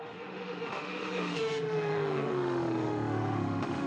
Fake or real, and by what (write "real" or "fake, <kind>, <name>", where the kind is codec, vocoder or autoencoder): fake, autoencoder, DAC-VAE